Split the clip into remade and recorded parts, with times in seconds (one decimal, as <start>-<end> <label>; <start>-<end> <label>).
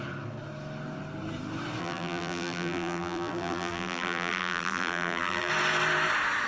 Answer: 0.0-1.8 recorded; 1.8-5.5 remade; 5.5-6.5 recorded